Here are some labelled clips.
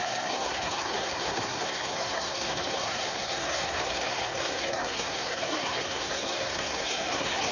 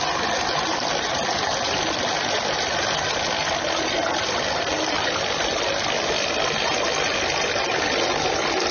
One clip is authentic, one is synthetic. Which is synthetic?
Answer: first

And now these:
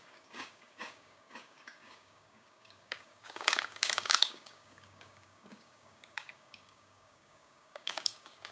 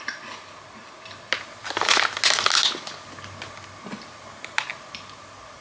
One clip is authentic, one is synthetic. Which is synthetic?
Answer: first